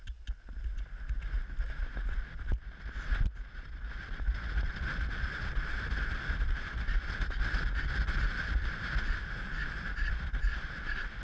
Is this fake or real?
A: real